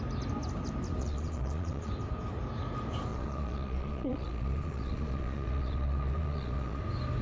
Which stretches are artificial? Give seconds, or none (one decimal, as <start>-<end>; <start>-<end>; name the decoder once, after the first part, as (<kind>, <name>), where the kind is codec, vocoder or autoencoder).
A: 1.0-1.9 (vocoder, Vocos); 3.1-6.8